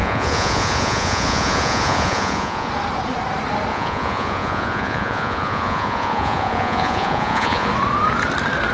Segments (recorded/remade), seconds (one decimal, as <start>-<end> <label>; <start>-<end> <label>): 0.0-2.7 remade; 2.7-3.7 recorded; 3.7-7.7 remade; 7.7-8.7 recorded